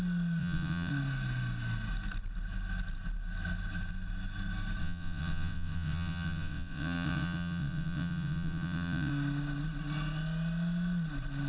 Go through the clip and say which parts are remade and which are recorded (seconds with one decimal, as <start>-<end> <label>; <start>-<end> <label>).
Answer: 0.0-0.4 recorded; 0.4-0.9 remade; 0.9-4.8 recorded; 4.8-9.1 remade; 9.1-11.5 recorded